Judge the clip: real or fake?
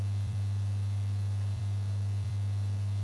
fake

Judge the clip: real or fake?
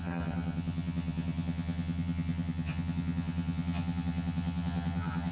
fake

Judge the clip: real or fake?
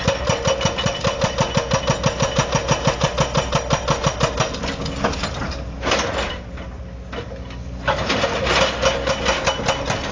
real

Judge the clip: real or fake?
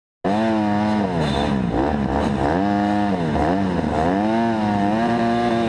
real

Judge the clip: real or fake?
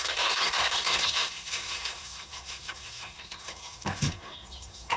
fake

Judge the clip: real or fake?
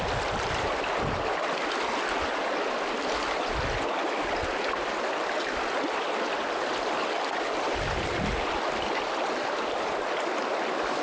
real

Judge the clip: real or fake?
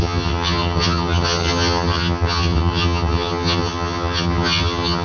fake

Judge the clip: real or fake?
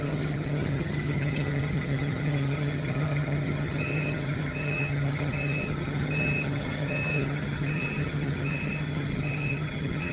fake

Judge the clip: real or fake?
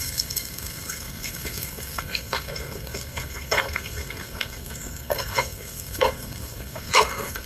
fake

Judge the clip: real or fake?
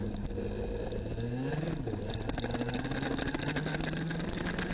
real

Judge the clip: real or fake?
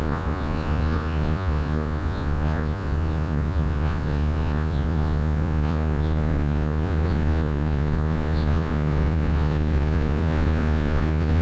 fake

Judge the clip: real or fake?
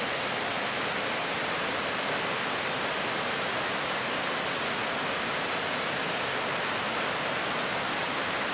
real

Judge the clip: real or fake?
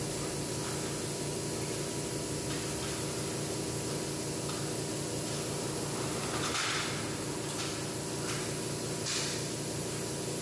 real